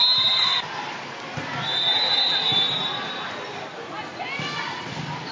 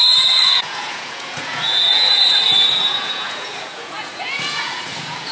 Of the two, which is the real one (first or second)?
first